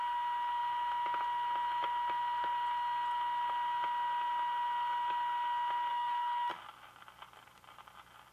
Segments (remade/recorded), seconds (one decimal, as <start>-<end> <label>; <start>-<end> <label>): 0.0-5.9 recorded; 5.9-6.5 remade; 6.5-8.3 recorded